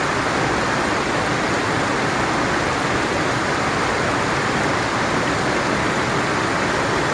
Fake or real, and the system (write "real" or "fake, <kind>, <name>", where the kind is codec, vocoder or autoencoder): real